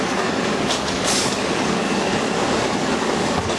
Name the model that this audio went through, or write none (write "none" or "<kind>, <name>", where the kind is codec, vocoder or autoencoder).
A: codec, DAC